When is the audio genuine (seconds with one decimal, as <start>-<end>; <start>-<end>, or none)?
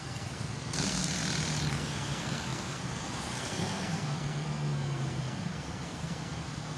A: 1.2-1.7